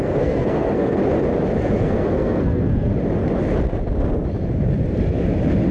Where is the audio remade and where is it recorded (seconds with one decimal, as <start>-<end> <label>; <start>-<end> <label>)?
0.0-1.0 remade; 1.0-1.6 recorded; 1.6-2.9 remade; 2.9-5.7 recorded